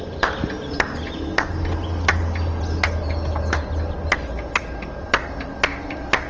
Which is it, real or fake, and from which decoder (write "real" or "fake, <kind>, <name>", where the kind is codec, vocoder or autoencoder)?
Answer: real